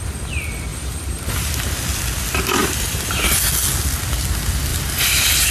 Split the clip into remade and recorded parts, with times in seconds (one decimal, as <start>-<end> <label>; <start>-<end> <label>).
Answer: 0.0-0.7 recorded; 0.7-1.5 remade; 1.5-2.6 recorded; 2.6-3.3 remade; 3.3-4.7 recorded; 4.7-5.5 remade